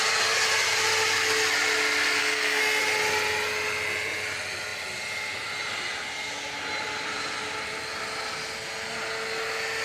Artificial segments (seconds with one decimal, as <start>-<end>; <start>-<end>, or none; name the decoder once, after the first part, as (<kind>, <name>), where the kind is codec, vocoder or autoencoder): 2.2-2.8 (codec, SNAC)